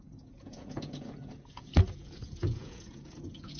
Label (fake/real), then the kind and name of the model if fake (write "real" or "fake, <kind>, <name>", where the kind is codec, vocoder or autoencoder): fake, vocoder, Vocos